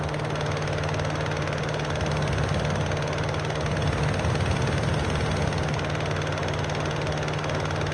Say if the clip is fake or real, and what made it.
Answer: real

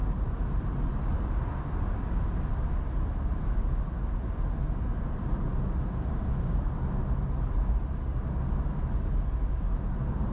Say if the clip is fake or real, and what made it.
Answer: real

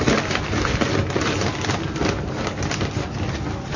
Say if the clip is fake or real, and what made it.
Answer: real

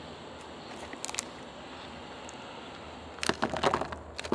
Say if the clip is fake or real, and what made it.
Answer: real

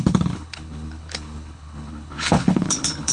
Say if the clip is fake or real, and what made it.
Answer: fake, codec, HILCodec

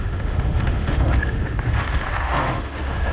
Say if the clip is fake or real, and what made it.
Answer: fake, autoencoder, DAC-VAE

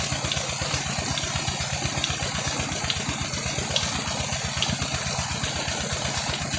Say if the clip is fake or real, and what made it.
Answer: real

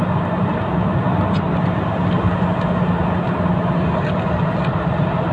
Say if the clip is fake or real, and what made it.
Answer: real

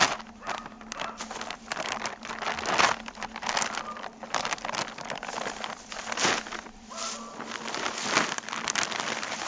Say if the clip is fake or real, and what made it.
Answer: real